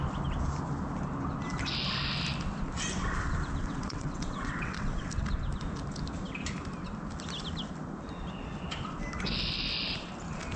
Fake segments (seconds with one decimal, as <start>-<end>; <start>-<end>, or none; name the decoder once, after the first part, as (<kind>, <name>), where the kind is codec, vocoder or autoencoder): 3.6-5.1 (vocoder, WaveNeXt)